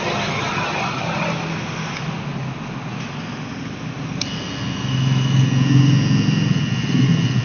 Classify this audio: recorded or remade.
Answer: recorded